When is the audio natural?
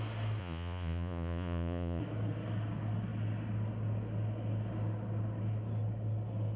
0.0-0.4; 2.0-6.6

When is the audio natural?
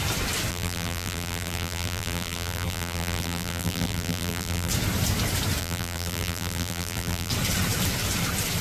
0.0-0.5; 4.7-5.6; 7.3-8.6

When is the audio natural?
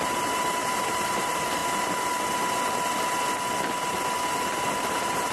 1.6-4.8